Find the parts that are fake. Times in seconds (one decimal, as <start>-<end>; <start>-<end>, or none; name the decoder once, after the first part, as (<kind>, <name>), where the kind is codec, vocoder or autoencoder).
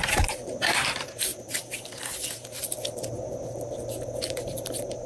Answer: 0.0-1.3 (vocoder, BigVGAN v2); 3.5-5.1